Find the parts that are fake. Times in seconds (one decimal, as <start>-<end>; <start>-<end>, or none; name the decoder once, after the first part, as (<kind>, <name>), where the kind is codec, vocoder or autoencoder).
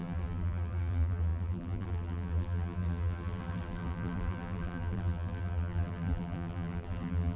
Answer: 0.0-7.4 (vocoder, BigVGAN v2)